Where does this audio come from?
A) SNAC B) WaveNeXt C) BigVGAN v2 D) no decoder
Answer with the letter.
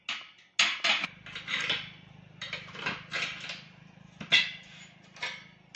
D